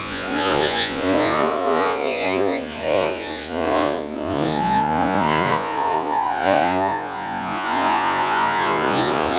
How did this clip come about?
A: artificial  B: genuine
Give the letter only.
A